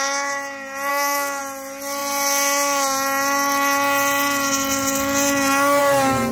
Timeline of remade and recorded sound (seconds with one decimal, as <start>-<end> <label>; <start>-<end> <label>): 0.0-0.9 recorded; 0.9-1.4 remade; 1.4-6.3 recorded